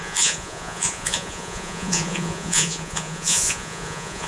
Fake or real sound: fake